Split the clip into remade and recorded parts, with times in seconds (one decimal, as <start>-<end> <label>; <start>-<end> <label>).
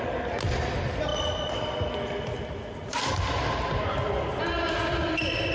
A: 0.0-5.5 recorded